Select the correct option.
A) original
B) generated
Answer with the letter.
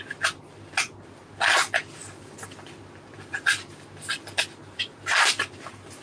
A